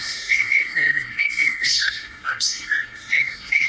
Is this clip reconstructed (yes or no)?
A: yes